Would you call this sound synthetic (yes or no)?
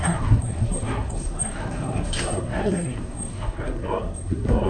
yes